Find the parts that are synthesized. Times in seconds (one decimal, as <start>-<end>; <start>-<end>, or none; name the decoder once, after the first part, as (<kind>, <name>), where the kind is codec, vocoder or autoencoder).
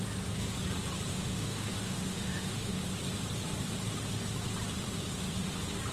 1.1-2.8 (autoencoder, DAC-VAE)